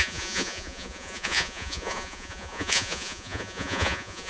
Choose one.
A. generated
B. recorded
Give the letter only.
A